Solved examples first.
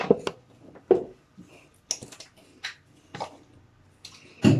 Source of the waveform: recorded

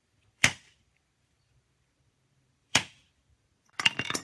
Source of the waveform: remade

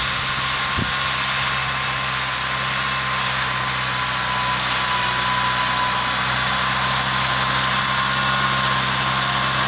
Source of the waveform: recorded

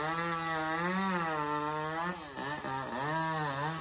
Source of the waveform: recorded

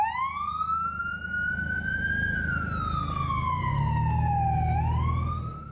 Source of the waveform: recorded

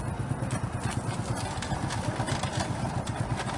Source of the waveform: recorded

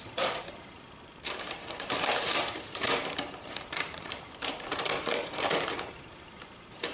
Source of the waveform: remade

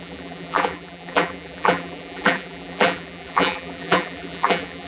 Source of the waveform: remade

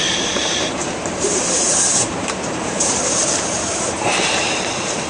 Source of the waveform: remade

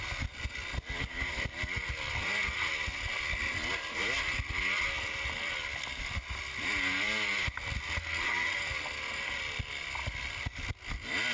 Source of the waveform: recorded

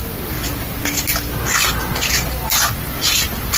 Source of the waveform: recorded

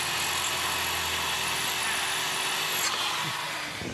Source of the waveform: recorded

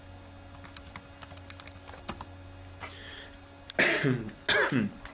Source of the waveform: recorded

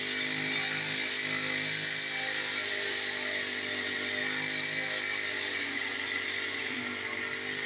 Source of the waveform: recorded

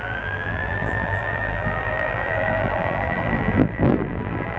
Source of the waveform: remade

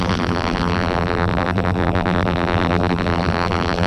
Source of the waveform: remade